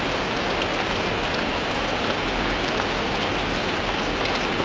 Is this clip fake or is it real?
real